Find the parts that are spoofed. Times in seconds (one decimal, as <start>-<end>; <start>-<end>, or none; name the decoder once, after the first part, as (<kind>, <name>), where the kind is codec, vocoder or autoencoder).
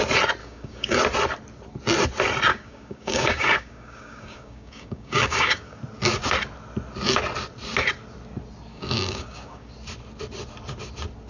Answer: 0.4-1.0 (codec, DAC); 2.5-5.8; 8.7-9.7